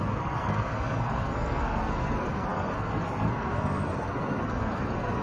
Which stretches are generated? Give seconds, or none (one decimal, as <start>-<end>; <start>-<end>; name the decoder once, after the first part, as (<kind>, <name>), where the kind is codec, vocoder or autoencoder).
0.0-5.2 (codec, SNAC)